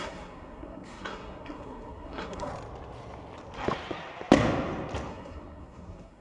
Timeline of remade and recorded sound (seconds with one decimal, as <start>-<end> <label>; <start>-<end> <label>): 0.0-2.5 remade; 2.5-5.1 recorded; 5.1-6.2 remade